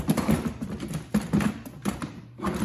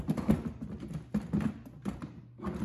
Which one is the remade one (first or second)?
first